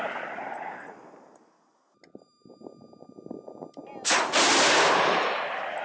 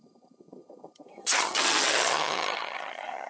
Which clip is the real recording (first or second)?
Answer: first